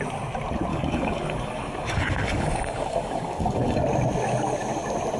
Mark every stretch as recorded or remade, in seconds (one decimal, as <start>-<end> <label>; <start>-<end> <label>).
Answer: 0.0-0.7 recorded; 0.7-3.8 remade; 3.8-5.2 recorded